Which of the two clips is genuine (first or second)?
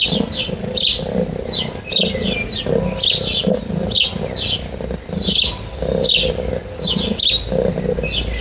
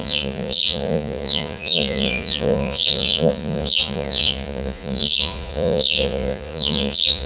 first